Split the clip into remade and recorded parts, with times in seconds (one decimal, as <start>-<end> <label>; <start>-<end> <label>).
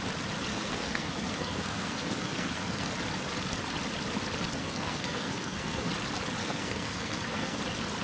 0.0-0.5 recorded; 0.5-2.9 remade; 2.9-4.6 recorded; 4.6-5.9 remade; 5.9-6.4 recorded; 6.4-7.6 remade; 7.6-8.0 recorded